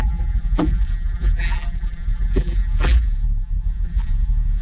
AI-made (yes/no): yes